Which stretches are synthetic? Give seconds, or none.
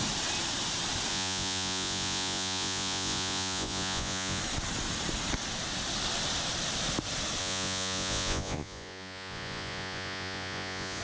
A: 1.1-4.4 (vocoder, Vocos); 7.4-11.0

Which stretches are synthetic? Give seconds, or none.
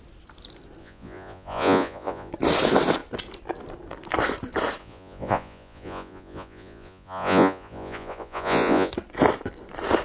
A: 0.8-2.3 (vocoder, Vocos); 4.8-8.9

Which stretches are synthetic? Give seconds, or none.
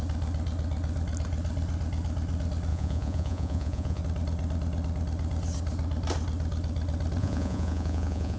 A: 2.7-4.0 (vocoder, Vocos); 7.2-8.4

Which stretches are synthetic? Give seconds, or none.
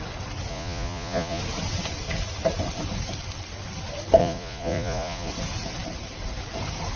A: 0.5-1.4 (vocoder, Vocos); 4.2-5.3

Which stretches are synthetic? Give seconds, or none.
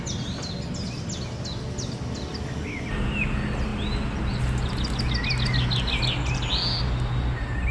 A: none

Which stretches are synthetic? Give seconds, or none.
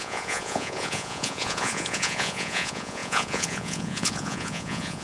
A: 0.0-5.0 (vocoder, Vocos)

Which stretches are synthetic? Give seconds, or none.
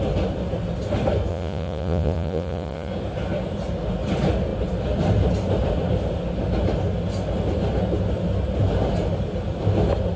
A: 1.3-2.9 (vocoder, Vocos)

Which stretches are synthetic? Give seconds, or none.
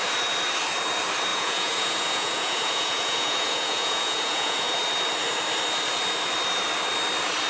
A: 1.3-4.7 (vocoder, Vocos)